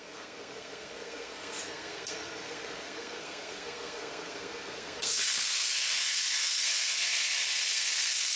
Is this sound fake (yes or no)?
yes